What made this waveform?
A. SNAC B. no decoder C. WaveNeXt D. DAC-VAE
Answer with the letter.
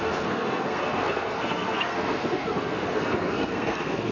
A